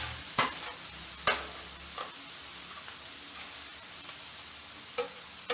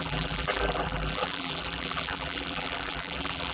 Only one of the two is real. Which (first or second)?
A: first